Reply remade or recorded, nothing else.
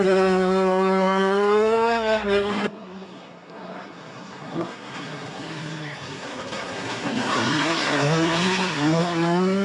remade